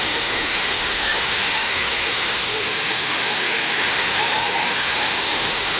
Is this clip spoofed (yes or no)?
yes